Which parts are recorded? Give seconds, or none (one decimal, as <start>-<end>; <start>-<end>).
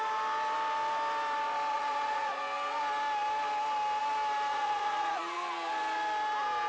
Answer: 0.0-1.7; 2.4-4.5; 5.2-6.7